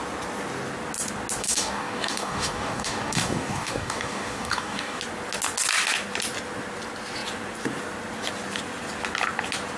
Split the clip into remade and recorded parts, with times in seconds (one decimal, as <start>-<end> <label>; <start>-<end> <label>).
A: 0.0-1.4 recorded; 1.4-5.0 remade; 5.0-9.8 recorded